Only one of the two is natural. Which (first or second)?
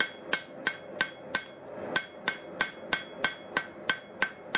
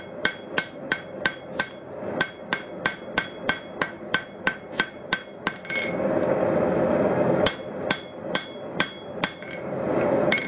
first